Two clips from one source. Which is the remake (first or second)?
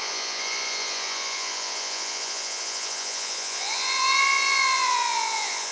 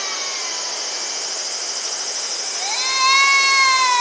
first